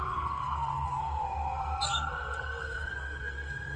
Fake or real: fake